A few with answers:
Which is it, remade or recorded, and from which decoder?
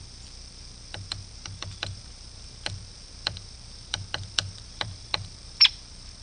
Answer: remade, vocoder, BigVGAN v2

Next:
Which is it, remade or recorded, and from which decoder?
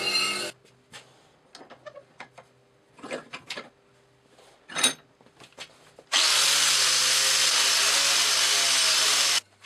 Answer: recorded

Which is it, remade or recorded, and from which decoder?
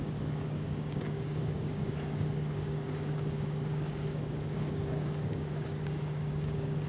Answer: remade, codec, DAC